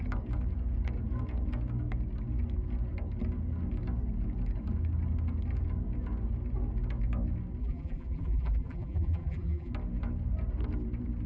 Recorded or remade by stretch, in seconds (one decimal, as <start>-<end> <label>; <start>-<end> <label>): 0.0-7.6 recorded; 7.6-9.7 remade; 9.7-11.3 recorded